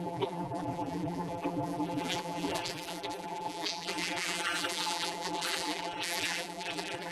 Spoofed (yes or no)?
yes